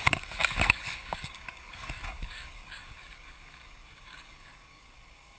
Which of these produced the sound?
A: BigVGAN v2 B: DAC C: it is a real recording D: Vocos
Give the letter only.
B